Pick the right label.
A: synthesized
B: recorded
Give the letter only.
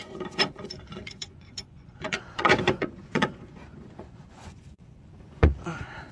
A